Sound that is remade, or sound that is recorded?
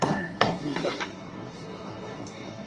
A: remade